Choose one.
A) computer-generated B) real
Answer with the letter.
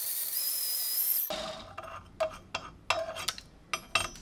B